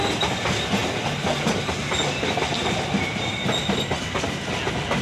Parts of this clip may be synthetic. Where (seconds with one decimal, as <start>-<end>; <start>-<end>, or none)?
none